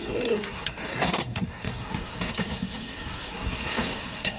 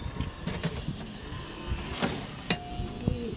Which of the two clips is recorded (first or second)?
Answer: second